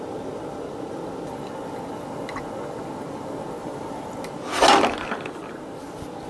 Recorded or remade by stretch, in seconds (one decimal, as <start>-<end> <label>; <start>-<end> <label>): 0.0-3.6 recorded; 3.6-4.1 remade; 4.1-6.3 recorded